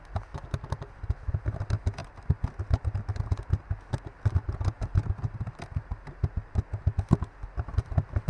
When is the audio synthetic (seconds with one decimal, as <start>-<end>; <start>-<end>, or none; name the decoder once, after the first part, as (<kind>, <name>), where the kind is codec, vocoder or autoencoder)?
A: none